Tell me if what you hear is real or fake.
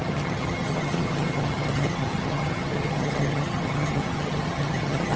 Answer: fake